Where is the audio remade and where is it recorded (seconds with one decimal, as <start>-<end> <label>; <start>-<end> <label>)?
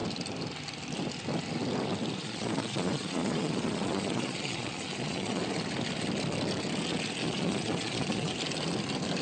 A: 0.0-2.2 recorded; 2.2-5.4 remade; 5.4-7.2 recorded; 7.2-8.3 remade; 8.3-9.2 recorded